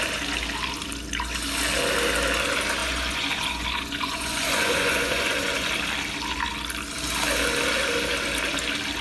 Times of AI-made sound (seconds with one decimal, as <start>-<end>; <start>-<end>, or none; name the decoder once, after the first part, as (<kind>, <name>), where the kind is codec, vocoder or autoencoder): 2.8-5.7 (vocoder, Vocos)

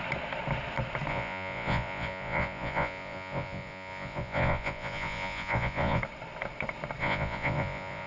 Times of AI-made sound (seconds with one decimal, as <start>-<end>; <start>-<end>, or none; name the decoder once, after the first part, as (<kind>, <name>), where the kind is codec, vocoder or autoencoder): 1.1-6.0 (vocoder, Vocos); 7.0-8.1